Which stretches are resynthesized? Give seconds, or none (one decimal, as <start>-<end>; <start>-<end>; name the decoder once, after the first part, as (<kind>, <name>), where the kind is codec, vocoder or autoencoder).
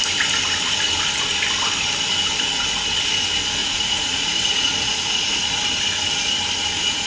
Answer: 3.6-5.6 (vocoder, Vocos)